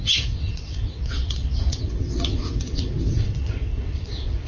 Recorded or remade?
remade